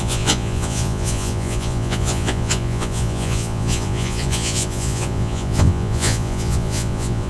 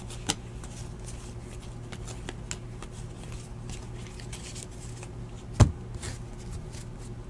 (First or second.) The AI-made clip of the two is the first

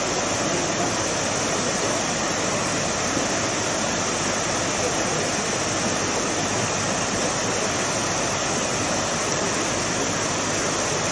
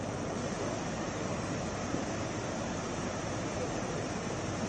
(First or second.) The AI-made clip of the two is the second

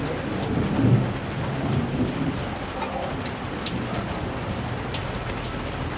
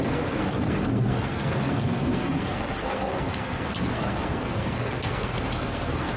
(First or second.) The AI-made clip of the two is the second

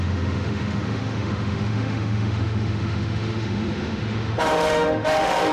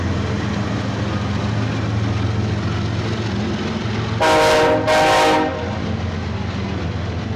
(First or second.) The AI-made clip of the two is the first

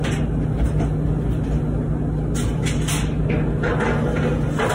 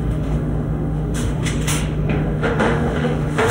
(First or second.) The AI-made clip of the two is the second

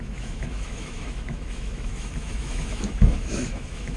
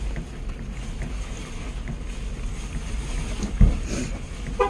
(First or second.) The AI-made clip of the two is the first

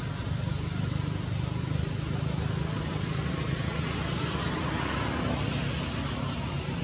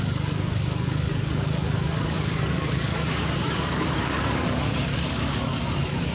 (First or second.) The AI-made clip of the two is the second